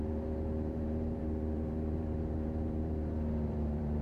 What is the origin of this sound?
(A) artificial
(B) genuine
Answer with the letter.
A